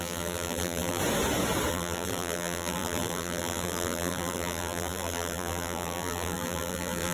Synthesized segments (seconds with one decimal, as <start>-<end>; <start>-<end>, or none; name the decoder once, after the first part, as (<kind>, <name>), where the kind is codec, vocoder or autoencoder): 0.0-1.0 (vocoder, BigVGAN v2); 1.7-7.1